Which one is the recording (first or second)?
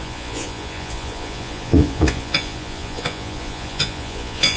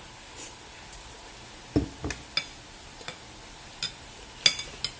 second